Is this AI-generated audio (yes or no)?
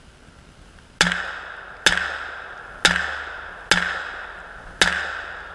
no